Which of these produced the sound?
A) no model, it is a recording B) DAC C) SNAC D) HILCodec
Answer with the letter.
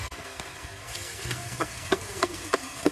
C